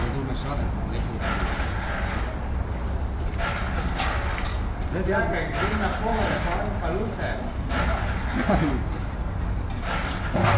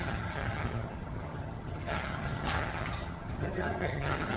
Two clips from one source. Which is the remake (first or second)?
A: second